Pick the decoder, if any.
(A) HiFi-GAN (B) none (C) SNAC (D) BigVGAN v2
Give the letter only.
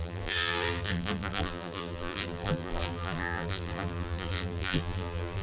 D